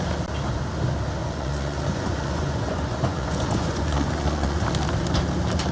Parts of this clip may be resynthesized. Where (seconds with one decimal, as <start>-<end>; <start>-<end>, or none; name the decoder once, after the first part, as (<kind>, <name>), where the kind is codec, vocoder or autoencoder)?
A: 1.2-4.6 (vocoder, Vocos)